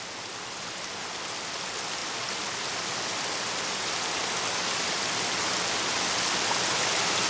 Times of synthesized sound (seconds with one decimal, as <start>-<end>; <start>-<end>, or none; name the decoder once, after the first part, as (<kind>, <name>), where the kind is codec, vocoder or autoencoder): none

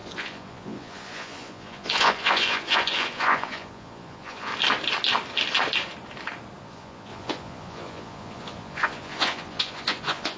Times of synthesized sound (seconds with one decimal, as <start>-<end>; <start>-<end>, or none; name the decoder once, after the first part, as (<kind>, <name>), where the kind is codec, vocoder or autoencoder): 0.0-4.5 (vocoder, Vocos); 6.6-10.4